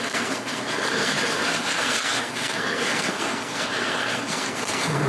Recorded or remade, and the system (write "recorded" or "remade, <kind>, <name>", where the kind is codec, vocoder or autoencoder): remade, codec, SNAC